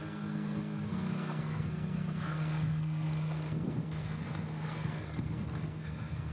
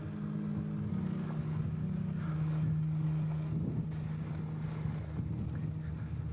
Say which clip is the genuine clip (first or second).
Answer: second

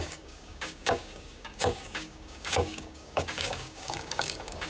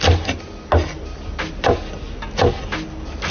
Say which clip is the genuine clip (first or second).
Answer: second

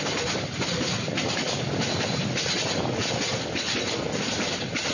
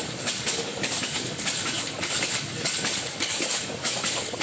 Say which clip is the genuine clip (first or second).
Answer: first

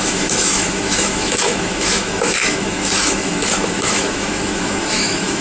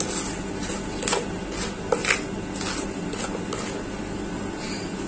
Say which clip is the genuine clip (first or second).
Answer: second